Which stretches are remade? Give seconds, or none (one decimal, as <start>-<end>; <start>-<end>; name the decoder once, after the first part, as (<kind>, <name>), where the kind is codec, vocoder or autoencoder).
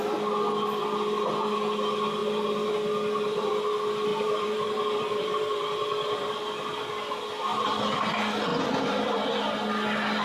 2.2-2.7 (vocoder, BigVGAN v2); 4.1-6.3; 7.5-8.1; 8.5-9.3